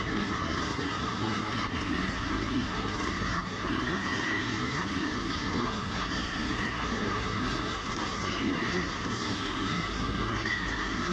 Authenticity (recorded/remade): remade